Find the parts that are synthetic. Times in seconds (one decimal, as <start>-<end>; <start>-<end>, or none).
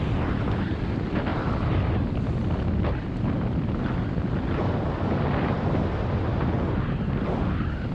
none